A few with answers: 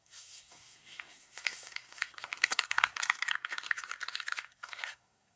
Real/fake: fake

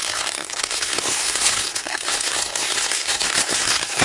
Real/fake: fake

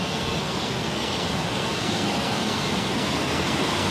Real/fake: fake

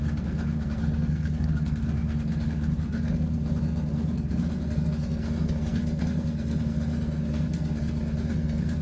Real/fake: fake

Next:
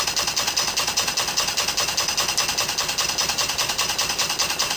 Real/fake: real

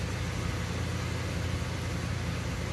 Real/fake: real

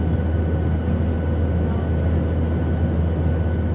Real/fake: real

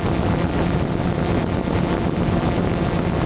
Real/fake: real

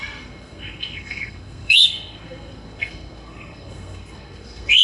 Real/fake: fake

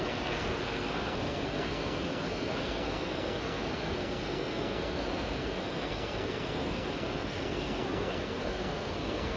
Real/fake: fake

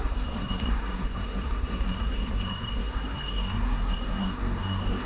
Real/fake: fake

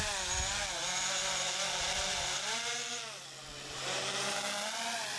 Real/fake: real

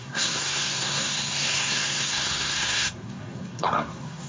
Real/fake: fake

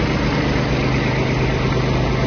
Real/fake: real